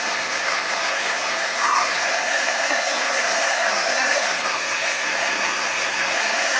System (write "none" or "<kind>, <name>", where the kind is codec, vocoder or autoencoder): codec, SNAC